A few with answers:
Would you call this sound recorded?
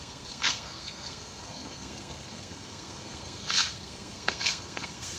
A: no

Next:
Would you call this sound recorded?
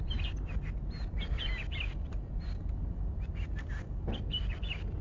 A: yes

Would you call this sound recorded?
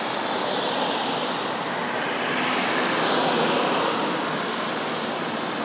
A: yes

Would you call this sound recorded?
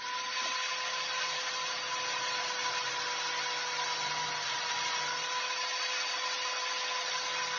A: yes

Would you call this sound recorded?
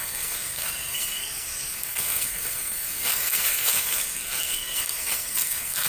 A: no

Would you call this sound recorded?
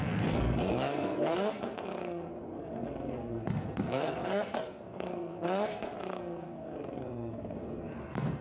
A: no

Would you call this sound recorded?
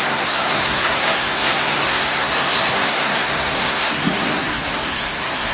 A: no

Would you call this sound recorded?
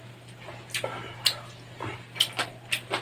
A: yes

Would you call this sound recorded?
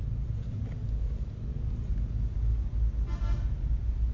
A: yes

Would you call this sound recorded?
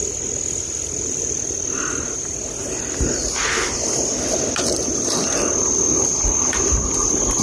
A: yes